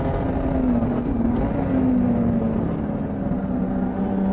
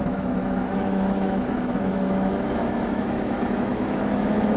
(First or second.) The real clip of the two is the first